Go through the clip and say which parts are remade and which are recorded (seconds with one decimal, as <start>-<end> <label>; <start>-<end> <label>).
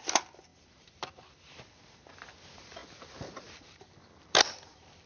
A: 0.0-2.8 remade; 2.8-3.4 recorded; 3.4-5.1 remade